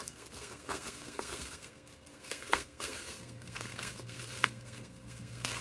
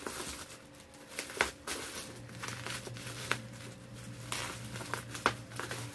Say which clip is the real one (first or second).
second